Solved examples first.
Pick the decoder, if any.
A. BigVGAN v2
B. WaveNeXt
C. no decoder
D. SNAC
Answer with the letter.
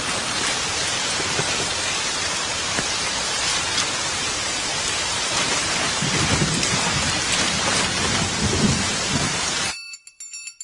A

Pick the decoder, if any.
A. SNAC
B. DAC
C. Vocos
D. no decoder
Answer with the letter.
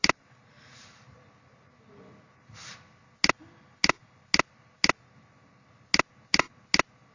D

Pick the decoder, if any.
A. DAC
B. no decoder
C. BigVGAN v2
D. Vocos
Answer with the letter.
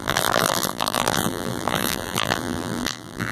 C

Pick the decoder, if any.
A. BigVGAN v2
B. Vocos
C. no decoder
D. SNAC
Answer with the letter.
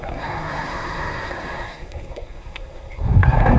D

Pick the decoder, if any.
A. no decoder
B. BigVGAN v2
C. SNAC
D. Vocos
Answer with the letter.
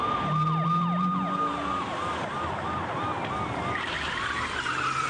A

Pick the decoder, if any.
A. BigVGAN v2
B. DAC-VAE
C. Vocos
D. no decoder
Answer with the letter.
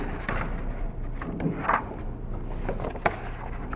D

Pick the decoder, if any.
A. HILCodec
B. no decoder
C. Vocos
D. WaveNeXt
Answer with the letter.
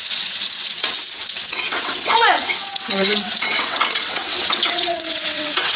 D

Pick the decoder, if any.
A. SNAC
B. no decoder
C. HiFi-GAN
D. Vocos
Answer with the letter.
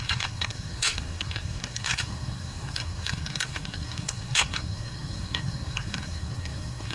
A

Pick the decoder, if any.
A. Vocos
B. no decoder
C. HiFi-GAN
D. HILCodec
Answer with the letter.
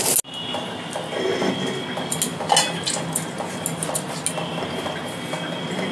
B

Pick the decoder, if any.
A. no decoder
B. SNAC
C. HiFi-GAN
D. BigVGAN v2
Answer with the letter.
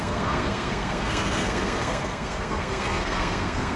B